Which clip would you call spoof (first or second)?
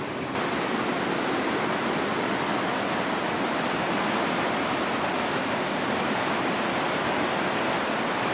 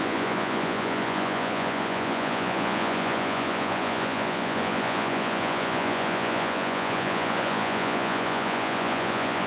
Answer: second